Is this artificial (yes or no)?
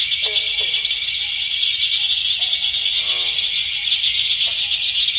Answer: no